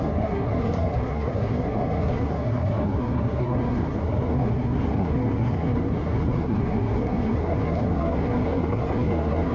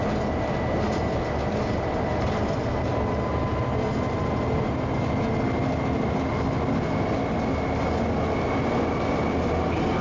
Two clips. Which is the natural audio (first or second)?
second